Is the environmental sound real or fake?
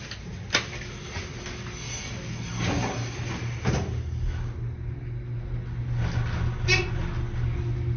real